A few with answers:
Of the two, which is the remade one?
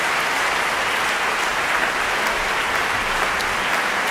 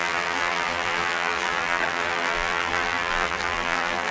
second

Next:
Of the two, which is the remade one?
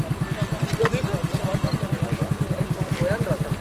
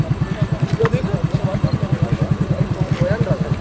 second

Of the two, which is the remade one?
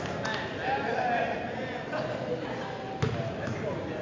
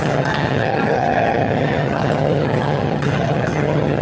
second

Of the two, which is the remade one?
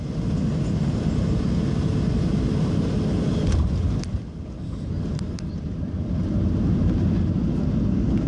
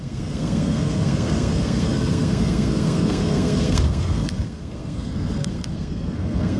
second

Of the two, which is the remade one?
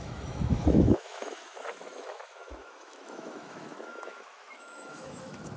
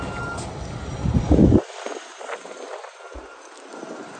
first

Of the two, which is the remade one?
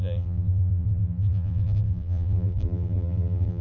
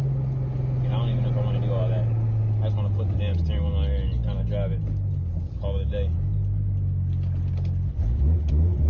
first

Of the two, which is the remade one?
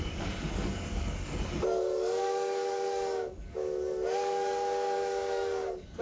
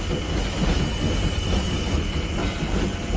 first